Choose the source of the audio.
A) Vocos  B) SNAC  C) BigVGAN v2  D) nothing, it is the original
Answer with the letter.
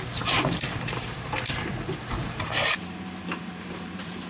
C